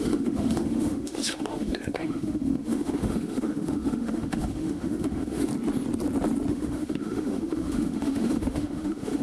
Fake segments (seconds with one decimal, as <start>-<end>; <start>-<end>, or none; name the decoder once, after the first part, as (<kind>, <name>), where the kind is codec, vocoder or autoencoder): 0.0-5.5 (autoencoder, DAC-VAE); 6.5-9.2